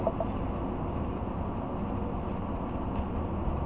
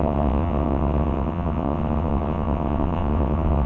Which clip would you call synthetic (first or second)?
second